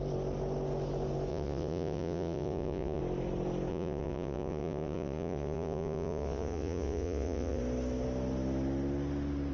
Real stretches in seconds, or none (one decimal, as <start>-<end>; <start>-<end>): 0.0-1.3; 3.0-3.7; 7.6-9.5